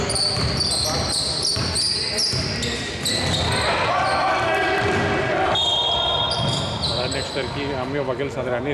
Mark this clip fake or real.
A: real